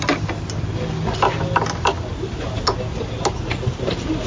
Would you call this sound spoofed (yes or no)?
no